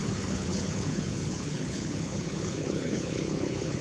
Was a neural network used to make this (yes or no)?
yes